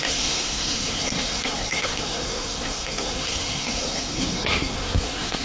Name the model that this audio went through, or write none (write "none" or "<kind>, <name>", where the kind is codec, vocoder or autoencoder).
codec, SNAC